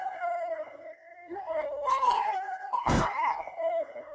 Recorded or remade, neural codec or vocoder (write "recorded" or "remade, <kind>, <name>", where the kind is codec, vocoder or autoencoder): remade, codec, SNAC